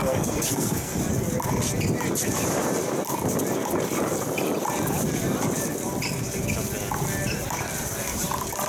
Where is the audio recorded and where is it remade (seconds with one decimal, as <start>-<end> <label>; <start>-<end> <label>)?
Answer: 0.0-1.0 remade; 1.0-8.7 recorded